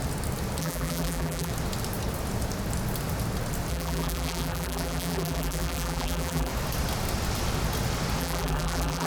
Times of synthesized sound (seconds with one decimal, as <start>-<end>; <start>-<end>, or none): 0.6-1.5; 3.7-6.5; 8.2-9.1